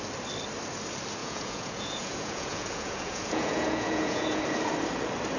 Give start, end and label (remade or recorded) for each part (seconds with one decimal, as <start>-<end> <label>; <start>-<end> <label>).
0.0-1.2 recorded; 1.2-4.4 remade; 4.4-5.4 recorded

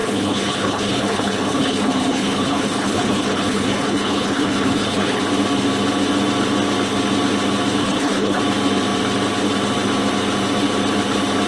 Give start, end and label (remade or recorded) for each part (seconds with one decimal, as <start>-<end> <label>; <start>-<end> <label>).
0.0-5.2 remade; 5.2-7.8 recorded; 7.8-8.4 remade; 8.4-11.5 recorded